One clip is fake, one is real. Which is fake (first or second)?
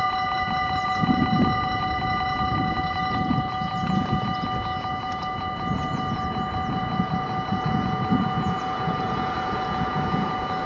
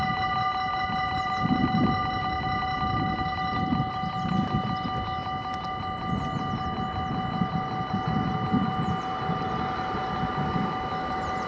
first